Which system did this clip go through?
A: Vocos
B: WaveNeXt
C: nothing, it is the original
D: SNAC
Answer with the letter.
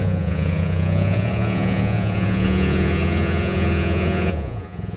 A